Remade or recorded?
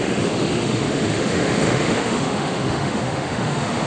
remade